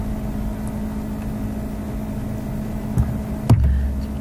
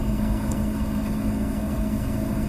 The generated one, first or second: second